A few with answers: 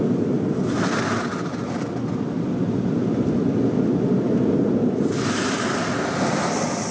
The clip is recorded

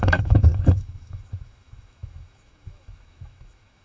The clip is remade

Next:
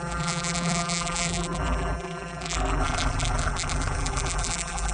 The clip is remade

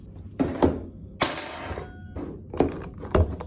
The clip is recorded